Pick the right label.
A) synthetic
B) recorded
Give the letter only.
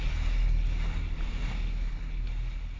B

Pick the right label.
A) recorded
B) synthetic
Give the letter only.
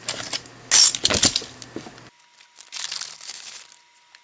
A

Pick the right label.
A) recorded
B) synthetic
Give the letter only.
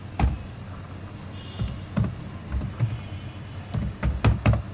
A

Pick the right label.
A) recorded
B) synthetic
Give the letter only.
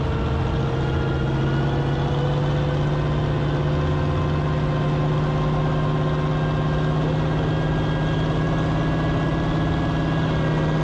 A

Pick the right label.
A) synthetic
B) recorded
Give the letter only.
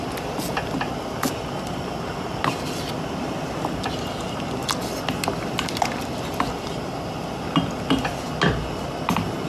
B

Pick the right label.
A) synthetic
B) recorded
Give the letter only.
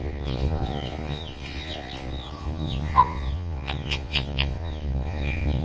A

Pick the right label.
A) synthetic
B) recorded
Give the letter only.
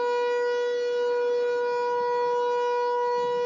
B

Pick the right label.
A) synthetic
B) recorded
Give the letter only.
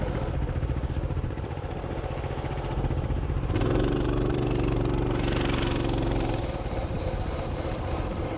A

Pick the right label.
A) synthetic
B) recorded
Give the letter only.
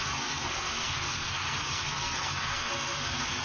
A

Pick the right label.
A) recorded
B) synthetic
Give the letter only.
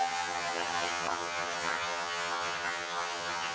B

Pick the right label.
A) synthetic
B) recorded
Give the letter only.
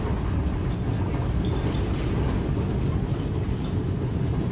B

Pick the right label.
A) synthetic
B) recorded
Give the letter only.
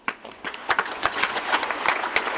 A